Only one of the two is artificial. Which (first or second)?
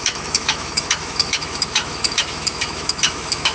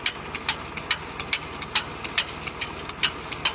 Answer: first